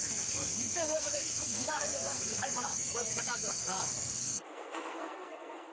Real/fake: fake